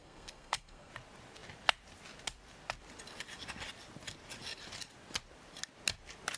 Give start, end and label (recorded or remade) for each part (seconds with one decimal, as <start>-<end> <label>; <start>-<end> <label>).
0.0-0.9 remade; 0.9-6.4 recorded